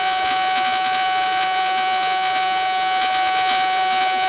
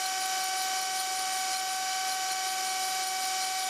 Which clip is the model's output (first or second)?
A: first